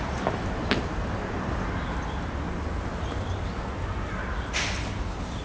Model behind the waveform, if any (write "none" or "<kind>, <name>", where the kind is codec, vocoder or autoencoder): none